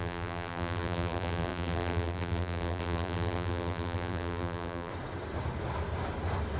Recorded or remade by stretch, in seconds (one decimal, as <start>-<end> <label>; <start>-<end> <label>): 0.0-4.9 remade; 4.9-6.6 recorded